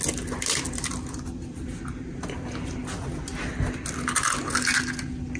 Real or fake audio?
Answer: real